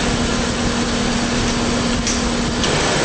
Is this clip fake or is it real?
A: real